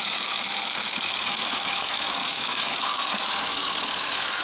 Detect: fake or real fake